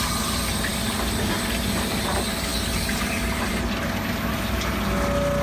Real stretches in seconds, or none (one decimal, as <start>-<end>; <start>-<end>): 0.0-5.4